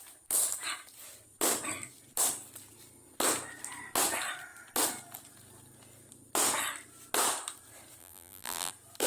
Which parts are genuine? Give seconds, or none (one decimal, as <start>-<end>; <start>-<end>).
0.0-8.0; 8.7-9.1